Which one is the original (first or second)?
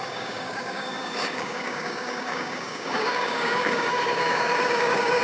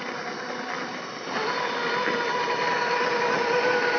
second